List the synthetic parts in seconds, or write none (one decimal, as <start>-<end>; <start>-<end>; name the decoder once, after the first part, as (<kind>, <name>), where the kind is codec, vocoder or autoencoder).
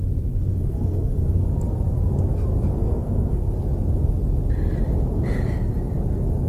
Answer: 0.5-1.3 (codec, SNAC); 2.8-3.4